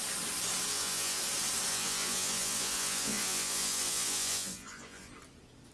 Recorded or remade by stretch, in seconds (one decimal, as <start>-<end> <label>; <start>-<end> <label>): 0.0-0.7 recorded; 0.7-1.2 remade; 1.2-1.7 recorded; 1.7-5.1 remade; 5.1-5.7 recorded